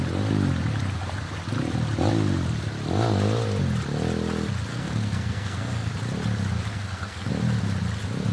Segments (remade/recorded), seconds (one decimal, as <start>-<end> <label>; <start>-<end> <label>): 0.0-4.7 recorded; 4.7-5.9 remade; 5.9-6.7 recorded; 6.7-7.3 remade; 7.3-8.3 recorded